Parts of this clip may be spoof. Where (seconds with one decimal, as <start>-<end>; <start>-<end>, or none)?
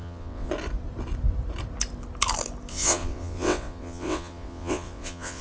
0.0-0.5; 2.7-5.4